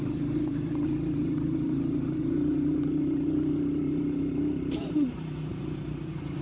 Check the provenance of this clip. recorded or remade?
remade